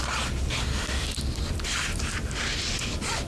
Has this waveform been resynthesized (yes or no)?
no